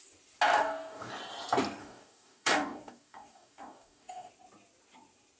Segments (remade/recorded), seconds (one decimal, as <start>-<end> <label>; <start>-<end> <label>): 0.0-0.5 recorded; 0.5-1.1 remade; 1.1-1.8 recorded; 1.8-4.3 remade; 4.3-5.4 recorded